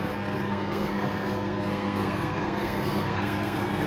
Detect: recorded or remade remade